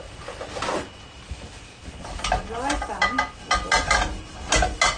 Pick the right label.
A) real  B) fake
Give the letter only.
A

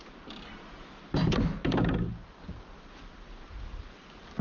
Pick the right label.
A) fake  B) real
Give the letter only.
B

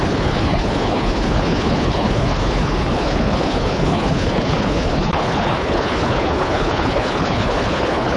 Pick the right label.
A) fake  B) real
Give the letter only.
A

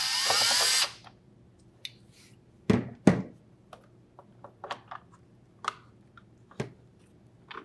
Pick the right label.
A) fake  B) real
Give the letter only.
B